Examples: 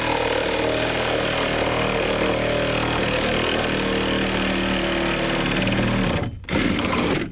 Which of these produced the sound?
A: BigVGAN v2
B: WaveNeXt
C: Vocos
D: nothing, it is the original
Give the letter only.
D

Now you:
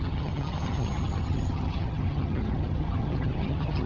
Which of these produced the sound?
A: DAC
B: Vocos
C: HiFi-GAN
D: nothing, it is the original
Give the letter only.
C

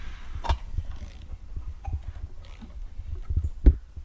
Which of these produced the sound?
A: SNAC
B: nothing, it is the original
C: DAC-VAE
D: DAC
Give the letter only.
B